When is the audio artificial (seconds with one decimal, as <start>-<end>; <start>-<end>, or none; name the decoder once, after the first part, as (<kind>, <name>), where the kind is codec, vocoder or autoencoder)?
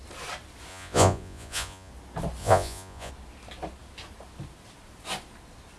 0.7-1.9 (vocoder, Vocos); 2.4-3.1